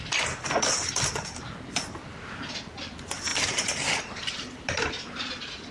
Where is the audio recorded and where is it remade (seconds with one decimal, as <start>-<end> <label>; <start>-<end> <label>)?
0.0-5.7 recorded